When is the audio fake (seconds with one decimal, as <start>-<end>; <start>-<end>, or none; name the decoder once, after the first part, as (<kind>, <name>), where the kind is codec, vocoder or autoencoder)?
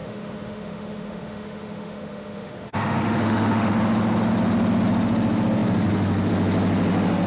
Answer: 0.0-3.7 (autoencoder, DAC-VAE)